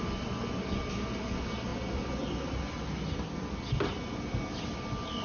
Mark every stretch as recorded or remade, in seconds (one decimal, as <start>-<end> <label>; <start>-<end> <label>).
0.0-5.2 recorded